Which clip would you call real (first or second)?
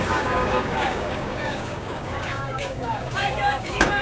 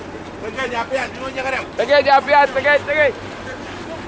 second